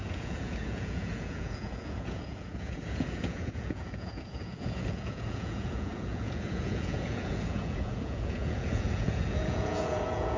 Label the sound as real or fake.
fake